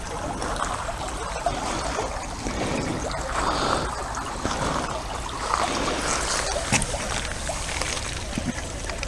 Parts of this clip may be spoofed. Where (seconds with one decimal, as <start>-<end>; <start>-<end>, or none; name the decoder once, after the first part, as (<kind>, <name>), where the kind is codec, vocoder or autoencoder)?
none